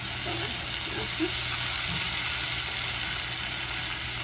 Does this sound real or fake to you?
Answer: real